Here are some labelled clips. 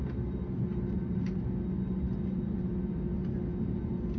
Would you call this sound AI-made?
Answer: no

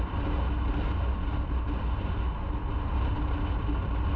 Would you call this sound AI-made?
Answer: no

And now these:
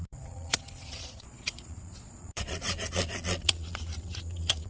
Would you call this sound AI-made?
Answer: yes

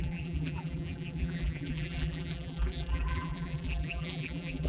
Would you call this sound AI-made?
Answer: yes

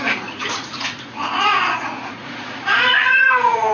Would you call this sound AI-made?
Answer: yes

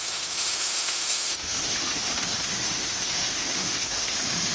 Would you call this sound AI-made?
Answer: yes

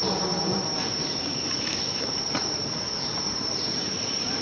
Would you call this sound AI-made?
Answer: yes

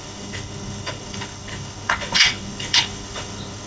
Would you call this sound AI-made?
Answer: yes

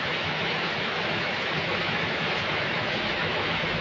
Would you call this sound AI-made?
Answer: yes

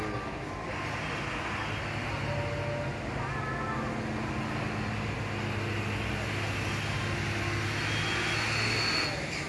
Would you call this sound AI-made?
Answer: no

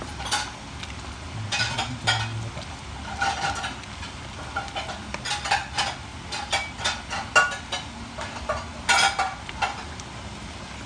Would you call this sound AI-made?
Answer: no